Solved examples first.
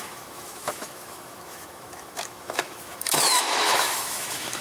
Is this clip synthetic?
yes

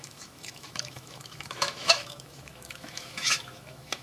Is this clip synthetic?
yes